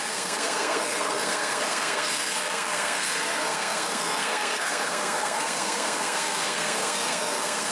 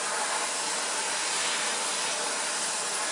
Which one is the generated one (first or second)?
first